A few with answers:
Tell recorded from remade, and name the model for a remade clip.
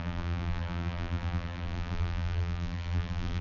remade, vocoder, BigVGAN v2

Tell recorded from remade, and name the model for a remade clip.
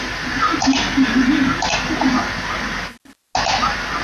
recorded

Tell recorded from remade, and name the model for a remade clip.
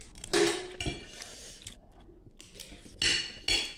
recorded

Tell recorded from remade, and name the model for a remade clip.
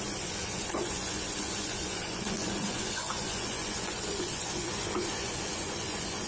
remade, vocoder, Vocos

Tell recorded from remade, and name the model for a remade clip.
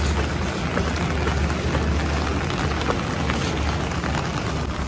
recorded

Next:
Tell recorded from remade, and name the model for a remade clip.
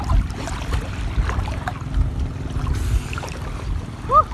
recorded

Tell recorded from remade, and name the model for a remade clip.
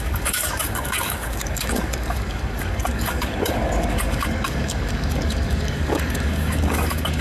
remade, codec, DAC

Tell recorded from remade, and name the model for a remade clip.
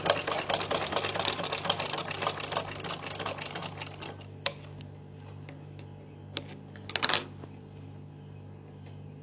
recorded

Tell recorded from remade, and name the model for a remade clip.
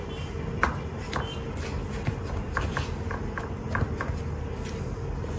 recorded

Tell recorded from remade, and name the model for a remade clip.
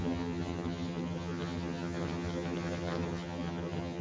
remade, vocoder, HiFi-GAN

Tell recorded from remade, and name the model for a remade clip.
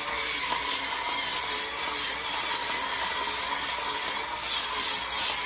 recorded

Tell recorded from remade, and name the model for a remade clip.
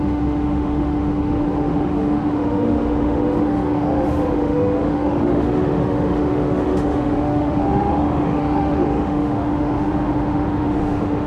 remade, autoencoder, DAC-VAE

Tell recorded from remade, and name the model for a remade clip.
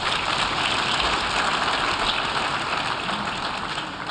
recorded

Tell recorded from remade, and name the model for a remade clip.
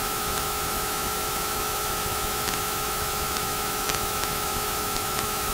remade, autoencoder, DAC-VAE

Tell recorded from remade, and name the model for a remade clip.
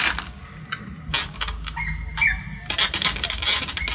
recorded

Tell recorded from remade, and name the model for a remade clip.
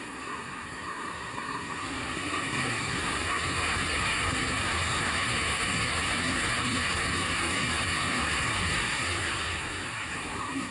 remade, codec, SNAC